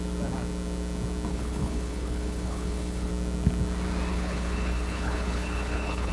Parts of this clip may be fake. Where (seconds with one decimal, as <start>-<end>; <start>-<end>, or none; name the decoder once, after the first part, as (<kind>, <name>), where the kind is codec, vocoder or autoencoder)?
1.3-3.1 (codec, HILCodec); 4.1-6.1